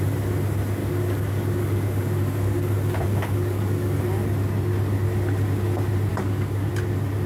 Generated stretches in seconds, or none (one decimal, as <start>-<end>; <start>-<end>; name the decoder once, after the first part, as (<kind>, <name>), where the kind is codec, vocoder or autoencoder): 0.8-4.0 (codec, DAC); 6.1-6.7